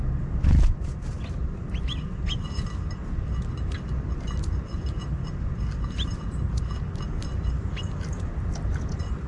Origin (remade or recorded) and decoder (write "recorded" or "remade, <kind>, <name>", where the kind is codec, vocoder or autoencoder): recorded